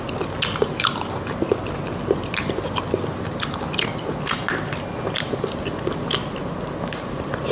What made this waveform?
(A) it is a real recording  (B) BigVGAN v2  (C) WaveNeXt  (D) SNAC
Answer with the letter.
A